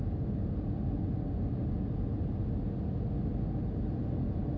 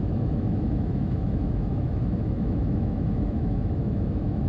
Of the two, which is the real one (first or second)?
first